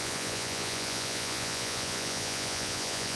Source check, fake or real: fake